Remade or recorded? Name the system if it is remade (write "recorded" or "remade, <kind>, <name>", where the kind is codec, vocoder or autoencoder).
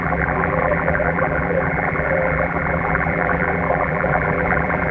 remade, vocoder, BigVGAN v2